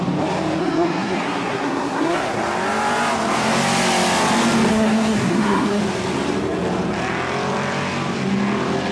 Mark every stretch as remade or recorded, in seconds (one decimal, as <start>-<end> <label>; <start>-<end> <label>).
0.0-0.6 recorded; 0.6-2.4 remade; 2.4-4.7 recorded; 4.7-5.8 remade; 5.8-8.9 recorded